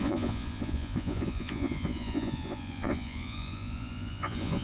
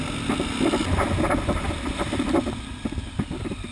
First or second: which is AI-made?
first